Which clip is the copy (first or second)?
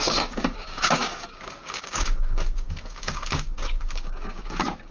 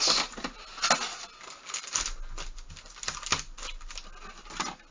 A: first